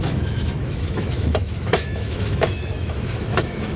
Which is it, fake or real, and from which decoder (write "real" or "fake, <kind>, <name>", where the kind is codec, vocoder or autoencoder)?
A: fake, autoencoder, DAC-VAE